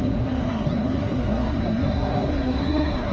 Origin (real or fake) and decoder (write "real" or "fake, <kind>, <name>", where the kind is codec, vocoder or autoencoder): fake, codec, SNAC